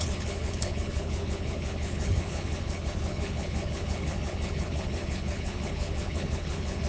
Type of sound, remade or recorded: remade